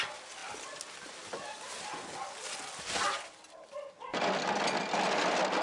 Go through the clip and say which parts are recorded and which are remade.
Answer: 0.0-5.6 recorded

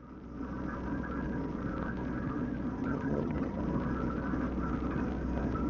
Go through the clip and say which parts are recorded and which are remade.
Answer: 0.0-2.8 recorded; 2.8-3.6 remade; 3.6-5.7 recorded

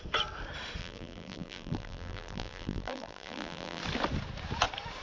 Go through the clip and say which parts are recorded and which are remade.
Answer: 0.0-0.8 recorded; 0.8-3.8 remade; 3.8-5.0 recorded